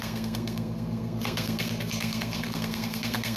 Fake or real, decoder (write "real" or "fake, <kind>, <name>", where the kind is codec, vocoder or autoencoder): fake, codec, SNAC